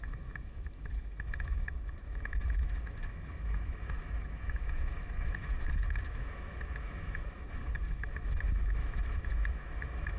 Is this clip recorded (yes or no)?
no